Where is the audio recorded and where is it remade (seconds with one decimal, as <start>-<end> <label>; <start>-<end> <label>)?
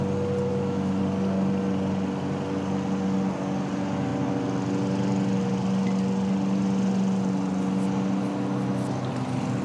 0.0-0.5 recorded; 0.5-1.0 remade; 1.0-9.6 recorded